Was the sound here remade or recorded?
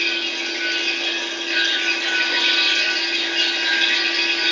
recorded